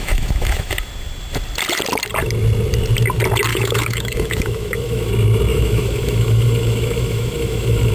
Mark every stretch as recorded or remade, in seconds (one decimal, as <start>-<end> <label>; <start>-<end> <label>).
0.0-0.7 remade; 0.7-3.5 recorded; 3.5-5.1 remade; 5.1-5.5 recorded; 5.5-7.9 remade